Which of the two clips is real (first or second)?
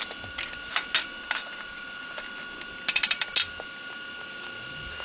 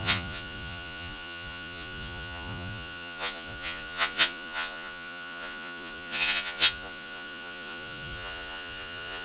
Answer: first